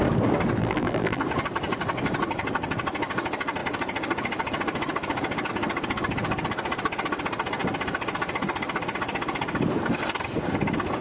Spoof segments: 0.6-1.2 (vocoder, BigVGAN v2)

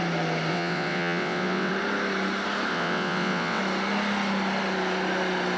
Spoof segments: 0.5-1.7 (vocoder, WaveNeXt); 2.7-3.6

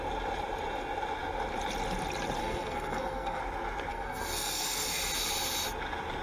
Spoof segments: 2.4-3.4 (codec, SNAC); 3.9-5.0

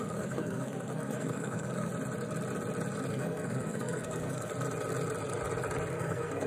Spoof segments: 0.0-1.9 (codec, SNAC); 3.1-4.5; 5.9-6.5

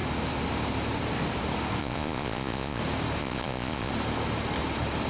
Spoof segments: 1.8-2.8 (vocoder, Vocos); 3.2-3.9

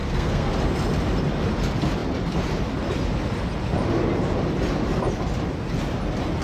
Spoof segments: 0.0-0.5 (codec, SNAC)

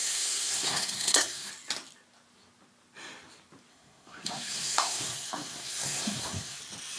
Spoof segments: 0.0-1.5 (codec, SNAC); 3.7-6.6